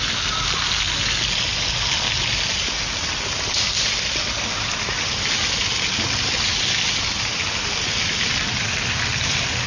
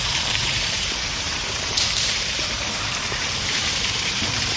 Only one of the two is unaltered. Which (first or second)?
first